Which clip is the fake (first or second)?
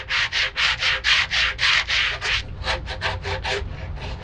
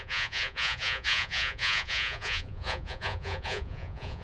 second